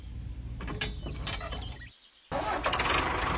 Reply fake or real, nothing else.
real